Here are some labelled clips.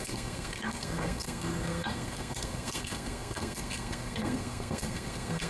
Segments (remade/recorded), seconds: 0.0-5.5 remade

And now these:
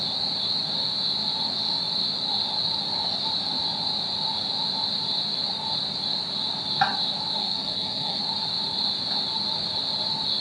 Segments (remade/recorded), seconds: 0.0-7.4 recorded; 7.4-8.2 remade; 8.2-10.4 recorded